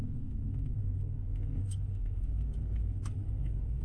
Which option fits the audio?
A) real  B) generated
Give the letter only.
B